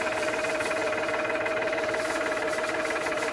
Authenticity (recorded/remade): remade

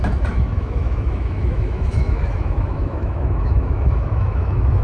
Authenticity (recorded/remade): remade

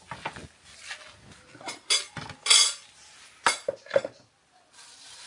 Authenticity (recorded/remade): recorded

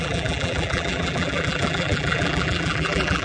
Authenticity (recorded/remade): remade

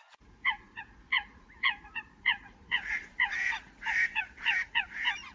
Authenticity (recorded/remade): remade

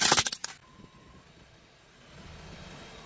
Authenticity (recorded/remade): recorded